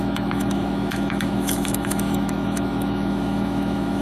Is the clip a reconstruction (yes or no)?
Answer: yes